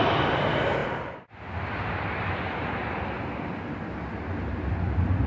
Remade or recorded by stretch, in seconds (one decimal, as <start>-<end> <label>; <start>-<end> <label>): 0.0-5.3 recorded